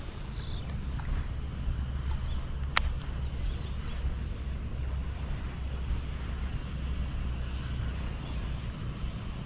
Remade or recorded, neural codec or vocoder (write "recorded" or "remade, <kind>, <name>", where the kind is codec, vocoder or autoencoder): recorded